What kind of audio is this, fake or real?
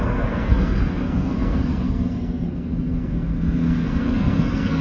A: fake